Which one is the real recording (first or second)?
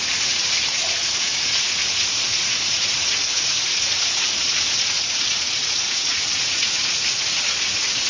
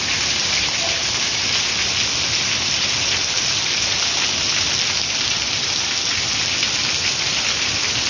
second